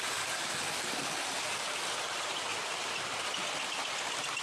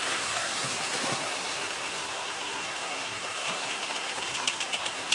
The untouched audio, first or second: first